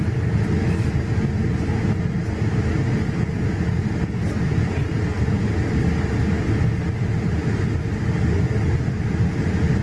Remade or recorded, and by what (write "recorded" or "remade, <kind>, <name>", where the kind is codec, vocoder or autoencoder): recorded